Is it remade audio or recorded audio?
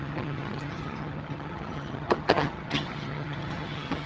remade